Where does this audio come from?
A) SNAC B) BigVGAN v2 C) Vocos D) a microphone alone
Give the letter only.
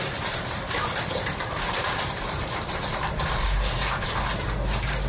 B